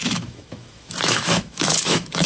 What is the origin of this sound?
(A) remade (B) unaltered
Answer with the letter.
A